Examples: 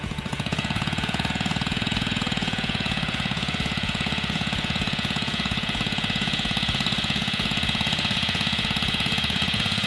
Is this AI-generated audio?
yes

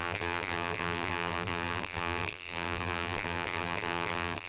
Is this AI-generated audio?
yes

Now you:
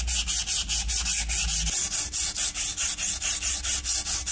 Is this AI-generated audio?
no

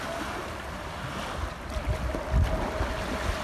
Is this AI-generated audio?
no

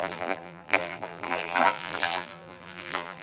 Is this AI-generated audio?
yes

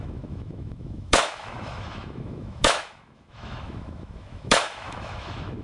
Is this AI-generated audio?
yes